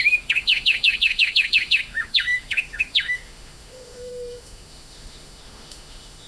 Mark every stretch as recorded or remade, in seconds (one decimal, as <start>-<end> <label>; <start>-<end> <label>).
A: 0.0-6.3 remade